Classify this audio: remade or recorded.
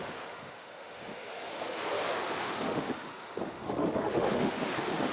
remade